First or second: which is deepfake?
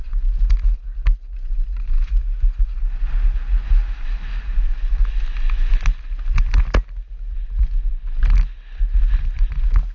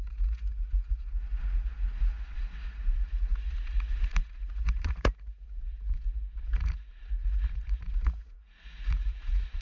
second